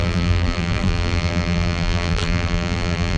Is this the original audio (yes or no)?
no